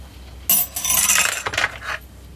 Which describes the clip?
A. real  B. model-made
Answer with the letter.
A